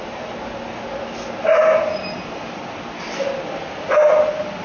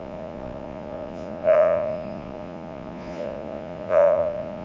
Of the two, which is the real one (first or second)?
first